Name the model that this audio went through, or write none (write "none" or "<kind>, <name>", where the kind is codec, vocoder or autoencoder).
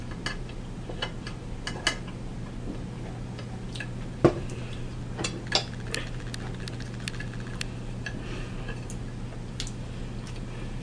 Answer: none